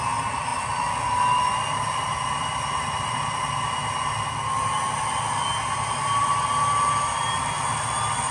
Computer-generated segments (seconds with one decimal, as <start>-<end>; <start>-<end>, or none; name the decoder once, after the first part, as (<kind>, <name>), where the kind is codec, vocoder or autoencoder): none

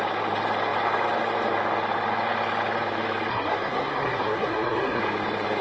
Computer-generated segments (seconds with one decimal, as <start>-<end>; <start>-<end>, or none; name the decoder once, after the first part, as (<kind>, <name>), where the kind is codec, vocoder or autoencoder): 3.3-5.0 (codec, SNAC)